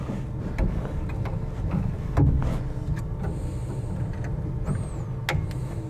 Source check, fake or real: real